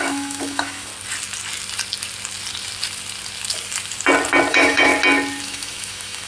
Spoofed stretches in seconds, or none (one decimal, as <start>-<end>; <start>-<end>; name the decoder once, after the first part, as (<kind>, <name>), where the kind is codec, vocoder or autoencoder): 0.0-0.9 (autoencoder, DAC-VAE); 4.5-4.9; 5.4-6.3